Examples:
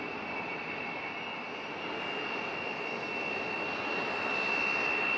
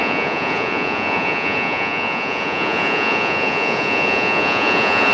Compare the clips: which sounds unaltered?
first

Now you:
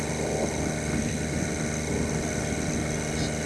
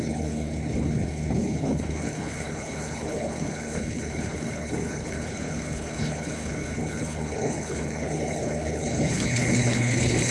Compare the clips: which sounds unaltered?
first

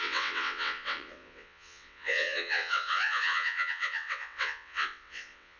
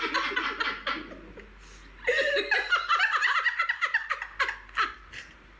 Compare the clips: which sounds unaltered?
second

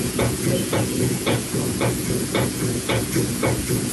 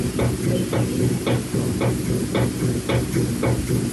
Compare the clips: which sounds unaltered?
second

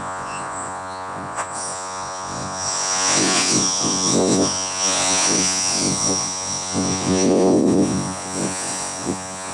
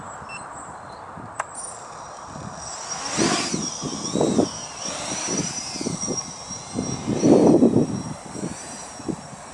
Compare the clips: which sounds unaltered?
second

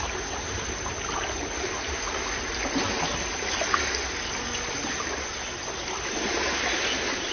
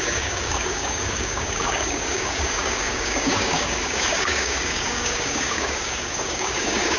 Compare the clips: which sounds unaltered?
first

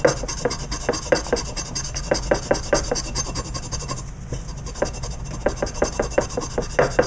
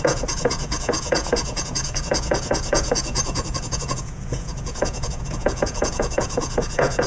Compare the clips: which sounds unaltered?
first